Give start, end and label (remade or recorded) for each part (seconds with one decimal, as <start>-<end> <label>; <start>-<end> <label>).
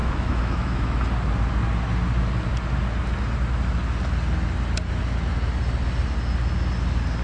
0.0-1.0 remade; 1.0-7.2 recorded